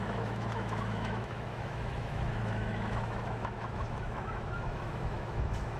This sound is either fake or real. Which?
fake